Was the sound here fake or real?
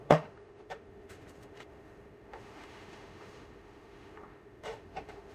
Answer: fake